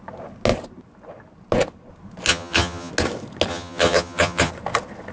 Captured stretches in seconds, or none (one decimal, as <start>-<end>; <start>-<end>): 0.0-2.3; 2.9-3.5; 4.5-5.1